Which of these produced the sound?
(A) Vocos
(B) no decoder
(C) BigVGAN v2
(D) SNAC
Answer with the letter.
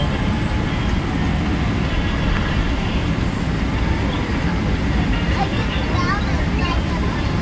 B